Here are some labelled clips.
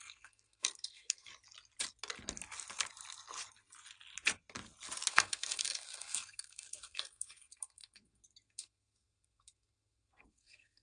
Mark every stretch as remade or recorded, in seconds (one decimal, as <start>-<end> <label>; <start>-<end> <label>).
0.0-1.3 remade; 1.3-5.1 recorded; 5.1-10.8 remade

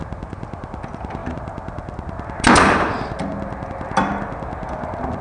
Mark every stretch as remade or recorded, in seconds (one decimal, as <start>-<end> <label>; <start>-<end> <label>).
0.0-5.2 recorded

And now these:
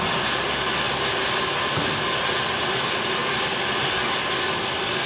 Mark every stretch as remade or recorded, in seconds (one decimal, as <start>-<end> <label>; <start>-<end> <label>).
0.0-5.1 recorded

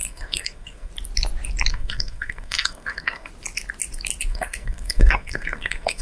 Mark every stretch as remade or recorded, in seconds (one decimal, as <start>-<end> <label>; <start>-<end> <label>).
0.0-0.9 remade; 0.9-1.7 recorded; 1.7-3.3 remade; 3.3-4.3 recorded; 4.3-6.0 remade

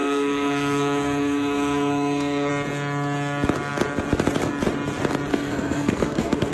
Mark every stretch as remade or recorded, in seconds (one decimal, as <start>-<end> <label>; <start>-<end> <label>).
0.0-2.5 remade; 2.5-5.3 recorded; 5.3-6.5 remade

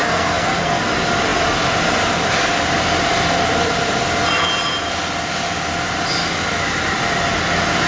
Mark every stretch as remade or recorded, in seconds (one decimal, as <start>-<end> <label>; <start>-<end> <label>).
0.0-0.8 remade; 0.8-7.9 recorded